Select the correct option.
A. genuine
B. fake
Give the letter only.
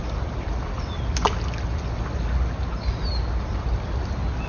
A